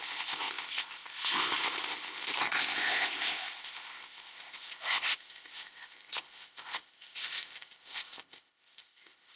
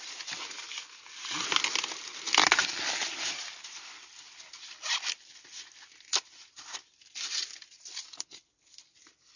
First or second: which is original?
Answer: second